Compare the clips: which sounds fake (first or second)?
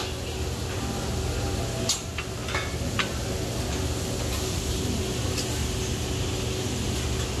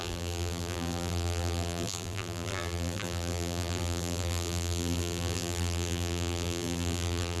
second